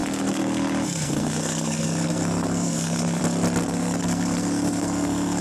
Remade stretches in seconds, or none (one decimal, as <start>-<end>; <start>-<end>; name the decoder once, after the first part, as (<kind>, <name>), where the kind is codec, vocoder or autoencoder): 0.0-3.2 (codec, SNAC); 3.6-5.4